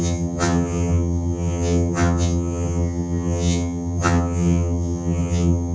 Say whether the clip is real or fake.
fake